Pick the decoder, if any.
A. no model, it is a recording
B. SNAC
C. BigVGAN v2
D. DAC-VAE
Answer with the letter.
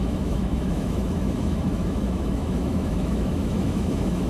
D